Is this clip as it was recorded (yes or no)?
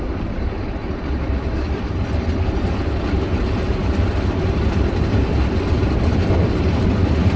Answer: yes